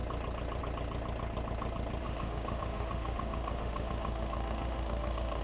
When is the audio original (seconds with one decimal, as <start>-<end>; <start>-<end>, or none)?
0.0-2.0